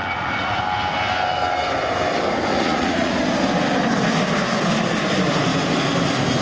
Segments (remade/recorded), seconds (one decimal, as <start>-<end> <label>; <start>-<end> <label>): 0.0-0.6 remade; 0.6-2.5 recorded; 2.5-3.1 remade; 3.1-6.4 recorded